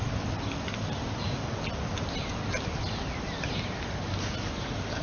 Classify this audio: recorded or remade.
recorded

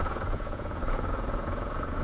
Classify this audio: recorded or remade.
remade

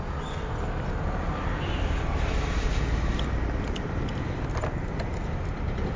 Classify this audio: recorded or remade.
recorded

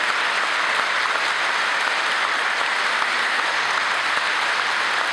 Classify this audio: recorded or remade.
recorded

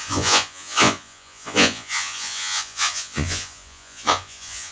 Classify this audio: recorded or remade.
remade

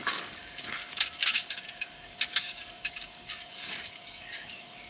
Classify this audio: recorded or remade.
remade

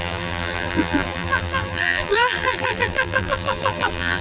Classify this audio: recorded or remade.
remade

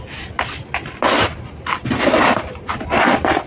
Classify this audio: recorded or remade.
recorded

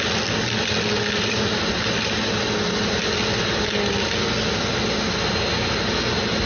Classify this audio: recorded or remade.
recorded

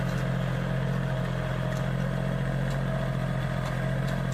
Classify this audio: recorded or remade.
recorded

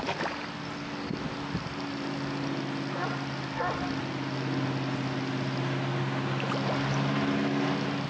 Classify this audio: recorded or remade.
recorded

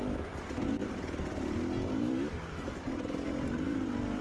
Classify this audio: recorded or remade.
remade